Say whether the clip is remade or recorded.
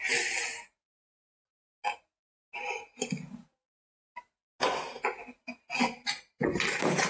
recorded